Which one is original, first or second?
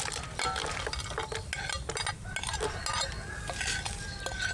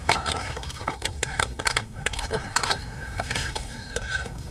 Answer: first